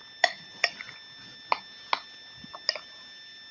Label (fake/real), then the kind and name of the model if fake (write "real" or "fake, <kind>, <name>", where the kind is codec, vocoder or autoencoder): real